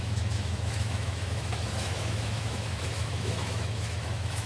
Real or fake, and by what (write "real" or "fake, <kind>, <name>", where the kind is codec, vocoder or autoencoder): fake, autoencoder, DAC-VAE